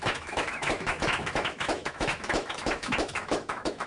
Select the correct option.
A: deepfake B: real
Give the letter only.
A